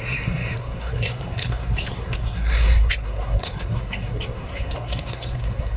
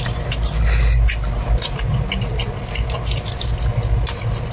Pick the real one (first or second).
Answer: second